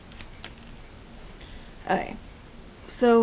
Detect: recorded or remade recorded